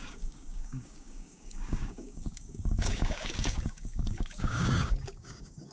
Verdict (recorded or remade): remade